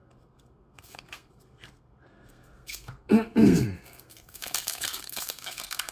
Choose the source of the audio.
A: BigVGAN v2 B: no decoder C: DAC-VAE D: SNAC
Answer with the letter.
D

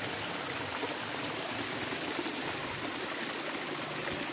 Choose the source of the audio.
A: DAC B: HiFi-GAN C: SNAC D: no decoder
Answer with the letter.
D